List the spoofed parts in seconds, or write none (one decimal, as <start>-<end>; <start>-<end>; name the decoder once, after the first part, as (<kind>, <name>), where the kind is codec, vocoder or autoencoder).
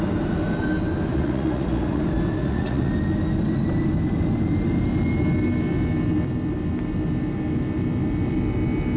1.1-2.0 (vocoder, Vocos); 2.4-2.9